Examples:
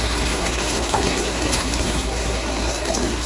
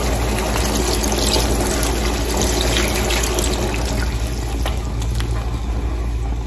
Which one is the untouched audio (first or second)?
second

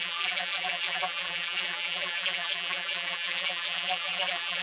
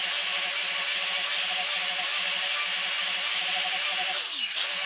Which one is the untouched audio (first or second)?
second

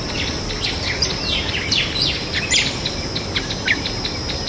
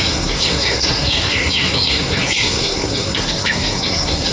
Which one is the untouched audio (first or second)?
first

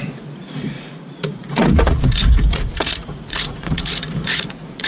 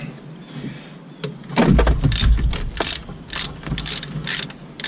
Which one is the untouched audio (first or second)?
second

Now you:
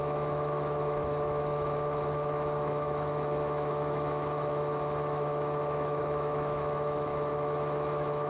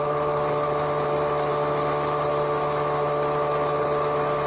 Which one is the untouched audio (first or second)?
second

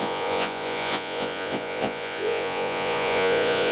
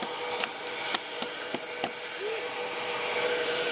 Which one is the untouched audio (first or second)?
second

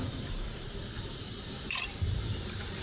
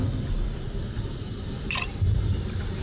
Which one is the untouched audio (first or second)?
second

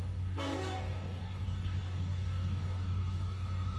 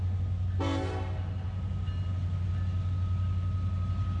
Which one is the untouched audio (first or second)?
second